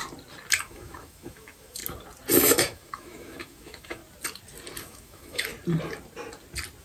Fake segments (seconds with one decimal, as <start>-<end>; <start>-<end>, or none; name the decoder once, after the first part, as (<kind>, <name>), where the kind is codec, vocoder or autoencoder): 0.6-1.8 (autoencoder, DAC-VAE); 2.4-4.0; 4.8-5.5